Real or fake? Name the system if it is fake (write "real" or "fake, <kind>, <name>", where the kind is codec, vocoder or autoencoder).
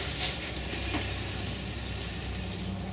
real